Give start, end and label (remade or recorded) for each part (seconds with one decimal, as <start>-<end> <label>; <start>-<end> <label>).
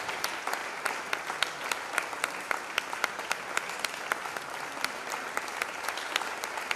0.0-6.8 recorded